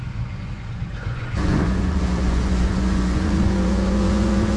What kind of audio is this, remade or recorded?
remade